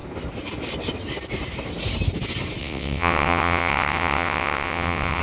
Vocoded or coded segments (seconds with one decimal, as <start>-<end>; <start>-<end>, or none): 2.6-5.2